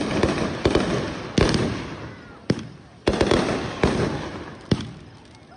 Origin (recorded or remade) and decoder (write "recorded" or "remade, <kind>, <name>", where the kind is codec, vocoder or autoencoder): recorded